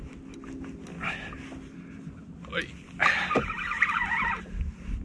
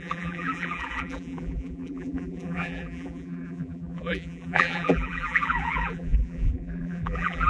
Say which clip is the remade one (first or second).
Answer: second